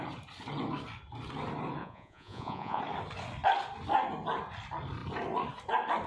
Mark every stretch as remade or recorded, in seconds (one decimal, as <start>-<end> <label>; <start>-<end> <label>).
0.0-1.8 recorded; 1.8-2.8 remade; 2.8-6.1 recorded